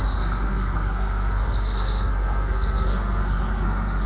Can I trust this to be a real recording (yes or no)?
no